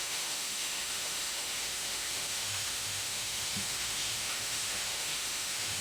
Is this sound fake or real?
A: fake